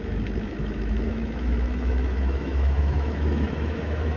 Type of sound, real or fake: fake